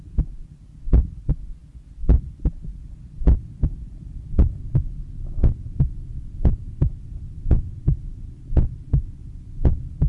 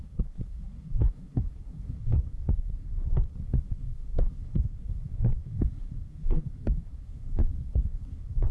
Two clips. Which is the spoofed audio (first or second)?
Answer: second